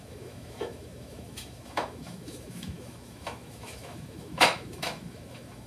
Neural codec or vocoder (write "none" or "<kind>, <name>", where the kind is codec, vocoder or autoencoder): autoencoder, DAC-VAE